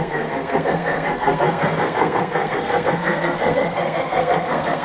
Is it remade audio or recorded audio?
remade